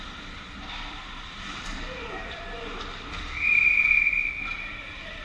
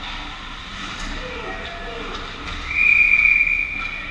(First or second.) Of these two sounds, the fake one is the first